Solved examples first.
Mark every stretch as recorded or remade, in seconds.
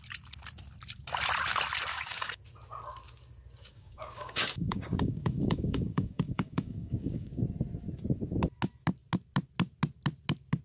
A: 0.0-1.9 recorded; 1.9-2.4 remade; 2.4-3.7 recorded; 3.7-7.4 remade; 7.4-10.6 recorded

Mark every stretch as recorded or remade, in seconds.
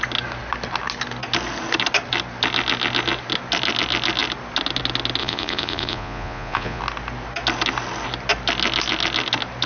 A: 0.0-5.2 recorded; 5.2-6.8 remade; 6.8-9.7 recorded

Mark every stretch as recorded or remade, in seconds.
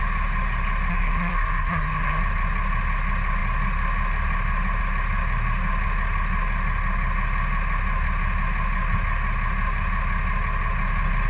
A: 0.0-0.9 recorded; 0.9-2.2 remade; 2.2-11.3 recorded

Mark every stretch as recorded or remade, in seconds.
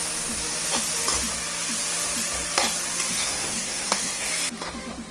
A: 0.0-3.1 recorded; 3.1-4.3 remade; 4.3-5.1 recorded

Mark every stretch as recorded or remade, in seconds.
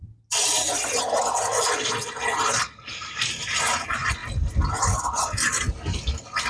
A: 0.0-6.5 recorded